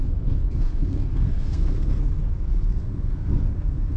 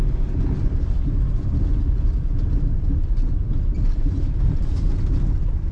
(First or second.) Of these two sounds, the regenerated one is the first